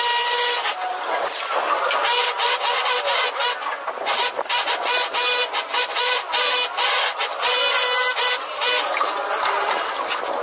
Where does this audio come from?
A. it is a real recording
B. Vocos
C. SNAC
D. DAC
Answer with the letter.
A